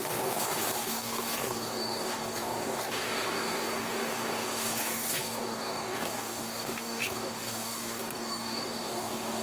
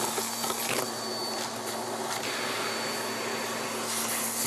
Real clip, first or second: second